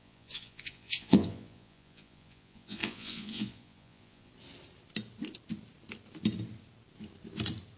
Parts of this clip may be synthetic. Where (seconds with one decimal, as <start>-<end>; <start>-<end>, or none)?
0.0-4.3